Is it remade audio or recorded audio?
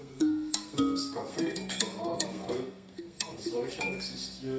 remade